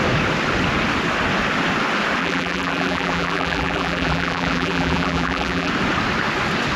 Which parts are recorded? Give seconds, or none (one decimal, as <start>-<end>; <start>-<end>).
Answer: 0.0-2.2; 5.7-6.8